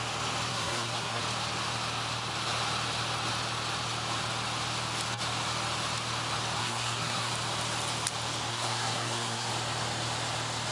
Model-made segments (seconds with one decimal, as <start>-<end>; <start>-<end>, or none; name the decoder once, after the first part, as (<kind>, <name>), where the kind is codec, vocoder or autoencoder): 0.5-1.2 (codec, SNAC); 6.6-7.3; 8.5-9.5